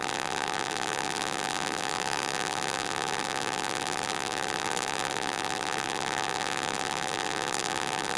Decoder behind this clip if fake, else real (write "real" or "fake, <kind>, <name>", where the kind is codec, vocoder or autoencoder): fake, vocoder, BigVGAN v2